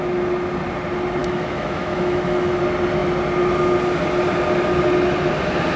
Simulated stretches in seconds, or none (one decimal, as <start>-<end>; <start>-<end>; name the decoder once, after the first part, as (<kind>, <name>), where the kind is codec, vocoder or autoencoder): 1.2-2.6 (autoencoder, DAC-VAE)